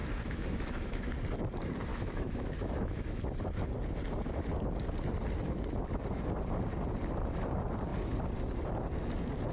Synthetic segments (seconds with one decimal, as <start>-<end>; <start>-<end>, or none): 0.0-1.1; 1.9-3.2